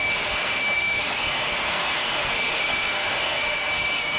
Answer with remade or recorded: remade